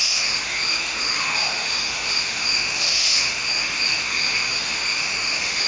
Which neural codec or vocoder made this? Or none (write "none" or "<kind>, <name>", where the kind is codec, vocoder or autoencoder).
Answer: autoencoder, DAC-VAE